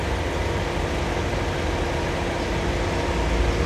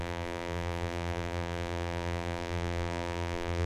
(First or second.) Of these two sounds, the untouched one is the first